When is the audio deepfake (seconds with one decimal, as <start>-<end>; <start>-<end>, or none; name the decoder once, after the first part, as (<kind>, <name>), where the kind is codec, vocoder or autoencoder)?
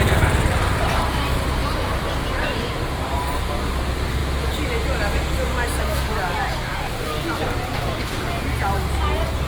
none